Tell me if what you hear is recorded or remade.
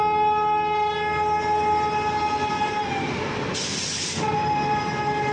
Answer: recorded